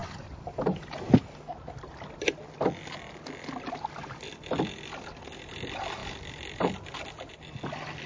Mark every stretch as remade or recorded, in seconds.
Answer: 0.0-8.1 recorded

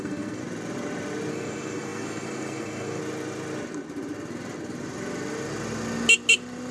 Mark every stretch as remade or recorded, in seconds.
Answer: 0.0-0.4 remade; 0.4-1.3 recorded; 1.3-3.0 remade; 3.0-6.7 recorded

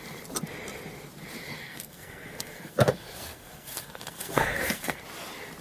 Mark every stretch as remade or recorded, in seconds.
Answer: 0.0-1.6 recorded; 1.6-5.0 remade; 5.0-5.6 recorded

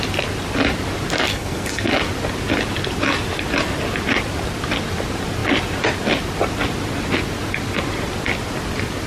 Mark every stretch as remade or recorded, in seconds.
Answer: 0.0-1.3 recorded; 1.3-1.9 remade; 1.9-9.1 recorded

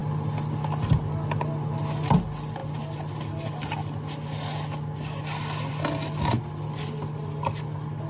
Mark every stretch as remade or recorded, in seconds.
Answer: 0.0-8.1 recorded

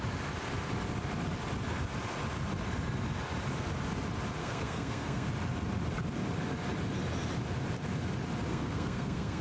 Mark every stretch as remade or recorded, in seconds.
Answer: 0.0-4.4 recorded; 4.4-5.3 remade; 5.3-8.5 recorded; 8.5-9.4 remade

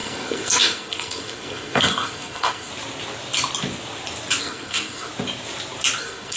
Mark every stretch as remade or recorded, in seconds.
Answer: 0.0-2.7 remade; 2.7-4.4 recorded; 4.4-5.1 remade; 5.1-6.0 recorded; 6.0-6.4 remade

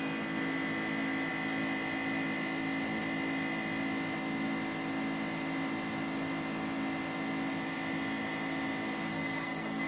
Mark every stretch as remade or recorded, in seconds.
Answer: 0.0-9.1 recorded; 9.1-9.9 remade